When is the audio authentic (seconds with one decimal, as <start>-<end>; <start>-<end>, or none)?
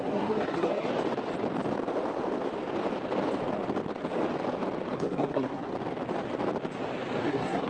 0.9-4.9; 5.7-7.2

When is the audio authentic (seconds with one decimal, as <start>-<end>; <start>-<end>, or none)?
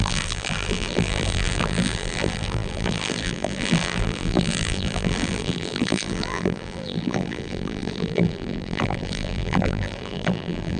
none